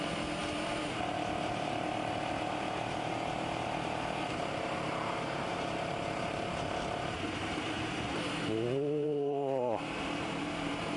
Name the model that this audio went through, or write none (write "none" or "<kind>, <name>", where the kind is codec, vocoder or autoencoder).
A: vocoder, BigVGAN v2